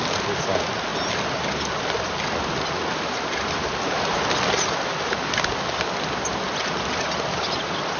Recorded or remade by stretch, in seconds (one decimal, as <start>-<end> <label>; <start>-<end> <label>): 0.0-8.0 recorded